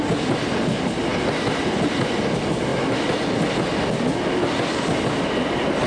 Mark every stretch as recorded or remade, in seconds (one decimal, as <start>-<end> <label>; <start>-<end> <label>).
0.0-5.9 recorded